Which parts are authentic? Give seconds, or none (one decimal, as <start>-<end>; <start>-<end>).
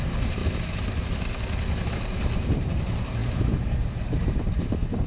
0.4-1.9